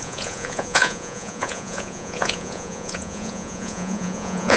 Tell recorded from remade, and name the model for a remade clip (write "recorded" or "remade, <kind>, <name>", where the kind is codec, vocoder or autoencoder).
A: remade, vocoder, Vocos